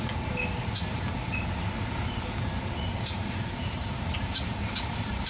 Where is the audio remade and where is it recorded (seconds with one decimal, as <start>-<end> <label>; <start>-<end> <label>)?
0.0-2.9 recorded; 2.9-4.0 remade; 4.0-4.5 recorded; 4.5-5.3 remade